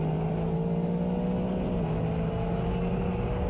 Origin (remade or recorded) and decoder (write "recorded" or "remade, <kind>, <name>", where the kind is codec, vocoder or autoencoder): recorded